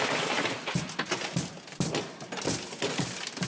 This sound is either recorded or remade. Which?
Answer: recorded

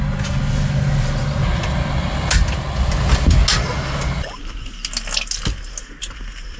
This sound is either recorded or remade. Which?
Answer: recorded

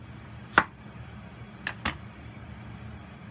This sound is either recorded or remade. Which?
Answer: recorded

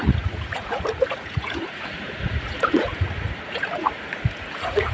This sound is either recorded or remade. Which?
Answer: remade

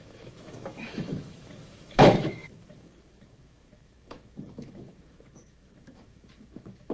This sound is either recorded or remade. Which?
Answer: remade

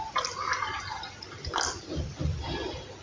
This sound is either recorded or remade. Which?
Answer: recorded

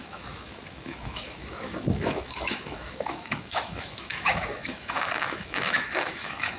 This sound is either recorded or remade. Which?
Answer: remade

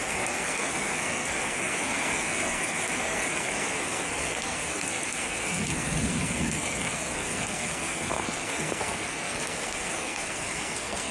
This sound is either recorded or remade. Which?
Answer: remade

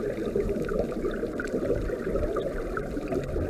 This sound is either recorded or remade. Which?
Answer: remade